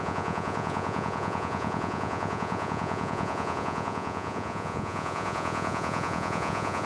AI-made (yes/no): yes